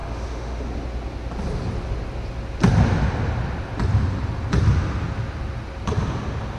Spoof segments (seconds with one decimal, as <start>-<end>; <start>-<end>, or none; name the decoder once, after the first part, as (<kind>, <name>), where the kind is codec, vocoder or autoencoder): 0.0-0.6 (autoencoder, DAC-VAE)

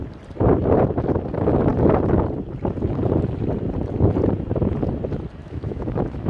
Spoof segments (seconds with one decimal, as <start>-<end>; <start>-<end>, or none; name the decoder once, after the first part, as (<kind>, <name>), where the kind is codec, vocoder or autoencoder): 5.4-6.3 (autoencoder, DAC-VAE)

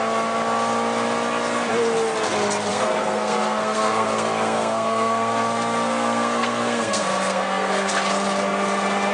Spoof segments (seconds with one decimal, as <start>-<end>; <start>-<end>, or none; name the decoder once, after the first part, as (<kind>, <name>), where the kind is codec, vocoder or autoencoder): 2.7-7.9 (codec, SNAC)

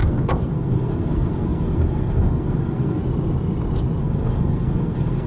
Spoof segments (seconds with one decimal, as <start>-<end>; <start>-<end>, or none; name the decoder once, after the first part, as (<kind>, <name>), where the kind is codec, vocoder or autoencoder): 0.0-3.0 (codec, SNAC); 4.0-5.3